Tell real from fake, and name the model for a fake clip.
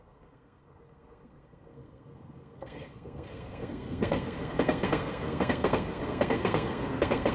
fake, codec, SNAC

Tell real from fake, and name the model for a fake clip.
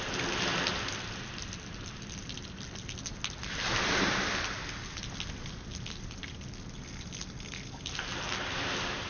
real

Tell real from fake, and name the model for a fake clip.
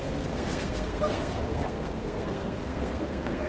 fake, codec, SNAC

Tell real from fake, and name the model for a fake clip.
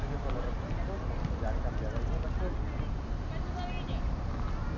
real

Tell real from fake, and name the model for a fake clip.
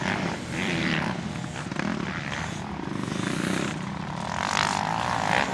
fake, vocoder, BigVGAN v2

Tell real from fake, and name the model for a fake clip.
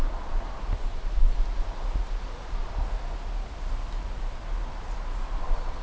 real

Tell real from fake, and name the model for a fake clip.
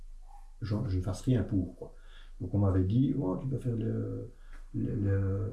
real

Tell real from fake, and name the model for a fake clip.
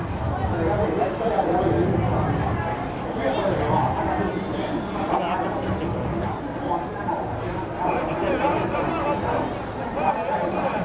real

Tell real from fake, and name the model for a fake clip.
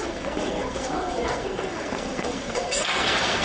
fake, codec, SNAC